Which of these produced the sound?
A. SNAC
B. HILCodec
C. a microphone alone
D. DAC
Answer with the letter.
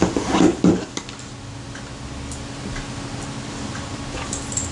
C